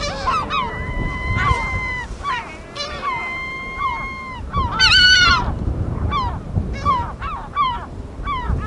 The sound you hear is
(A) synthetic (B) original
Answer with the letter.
A